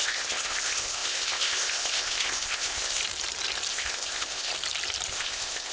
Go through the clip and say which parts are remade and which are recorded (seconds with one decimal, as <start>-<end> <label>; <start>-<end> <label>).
0.0-3.0 remade; 3.0-3.7 recorded; 3.7-4.5 remade; 4.5-5.1 recorded; 5.1-5.7 remade